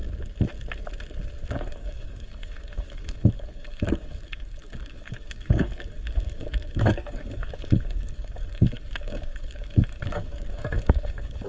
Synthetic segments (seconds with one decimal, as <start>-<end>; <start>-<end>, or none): 1.5-11.5